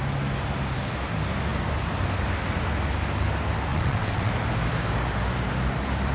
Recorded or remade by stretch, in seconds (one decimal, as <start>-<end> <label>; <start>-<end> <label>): 0.0-3.7 recorded; 3.7-4.3 remade; 4.3-6.1 recorded